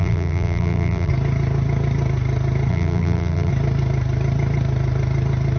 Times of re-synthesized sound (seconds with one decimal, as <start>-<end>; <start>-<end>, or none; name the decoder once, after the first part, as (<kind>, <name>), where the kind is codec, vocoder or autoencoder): 0.0-1.1 (vocoder, BigVGAN v2); 2.7-3.5